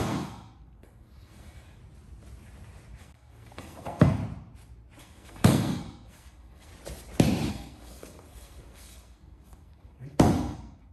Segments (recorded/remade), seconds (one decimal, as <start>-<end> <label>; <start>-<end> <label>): 0.0-1.8 remade; 1.8-3.0 recorded; 3.0-4.2 remade; 4.2-5.0 recorded; 5.0-6.7 remade; 6.7-7.5 recorded; 7.5-10.9 remade